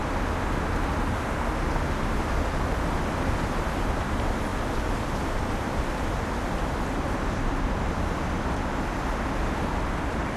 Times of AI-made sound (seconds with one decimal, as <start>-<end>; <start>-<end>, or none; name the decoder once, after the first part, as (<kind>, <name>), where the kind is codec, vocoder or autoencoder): 1.6-10.4 (vocoder, BigVGAN v2)